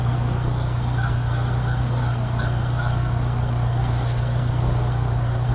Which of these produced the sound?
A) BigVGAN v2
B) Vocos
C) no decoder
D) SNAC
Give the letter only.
D